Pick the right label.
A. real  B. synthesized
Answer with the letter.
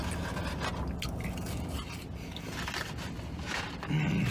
A